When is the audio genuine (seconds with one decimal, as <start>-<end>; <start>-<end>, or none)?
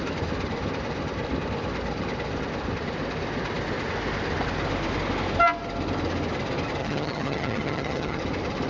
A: 0.0-6.8; 8.2-8.7